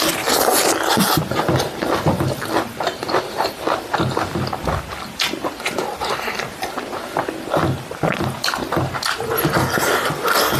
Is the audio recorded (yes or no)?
yes